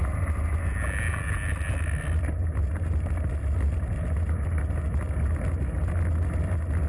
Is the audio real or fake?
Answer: real